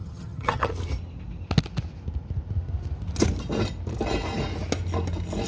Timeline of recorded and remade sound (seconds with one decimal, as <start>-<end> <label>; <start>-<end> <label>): 0.0-0.7 remade; 0.7-5.5 recorded